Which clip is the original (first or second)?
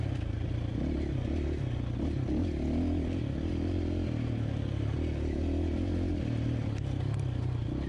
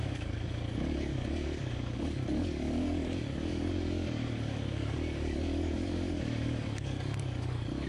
first